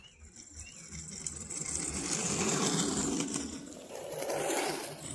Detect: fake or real fake